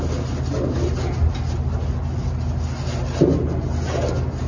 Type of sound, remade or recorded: recorded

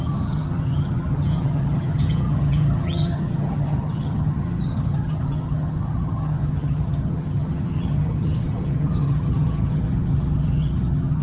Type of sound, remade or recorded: remade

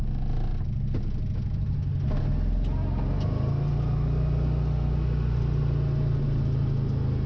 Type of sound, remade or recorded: recorded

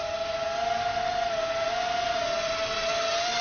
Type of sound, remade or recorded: recorded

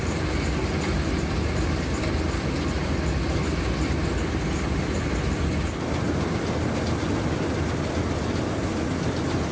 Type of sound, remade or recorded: recorded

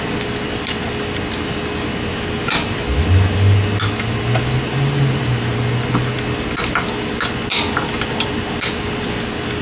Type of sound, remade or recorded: recorded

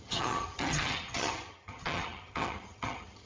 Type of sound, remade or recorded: remade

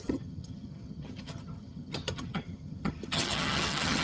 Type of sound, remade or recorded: remade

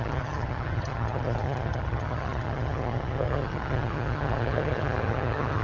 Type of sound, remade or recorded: remade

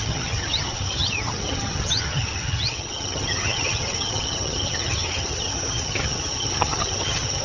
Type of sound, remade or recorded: remade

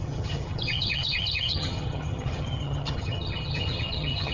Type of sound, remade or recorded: remade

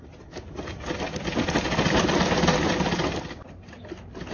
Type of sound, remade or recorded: recorded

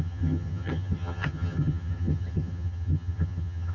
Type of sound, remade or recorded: remade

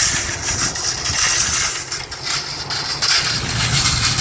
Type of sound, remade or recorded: recorded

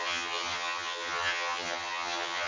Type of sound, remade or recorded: remade